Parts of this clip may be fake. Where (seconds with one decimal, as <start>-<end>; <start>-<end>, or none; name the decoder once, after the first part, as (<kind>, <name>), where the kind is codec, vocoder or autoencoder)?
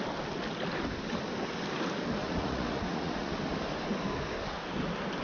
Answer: 2.2-3.3 (vocoder, Vocos)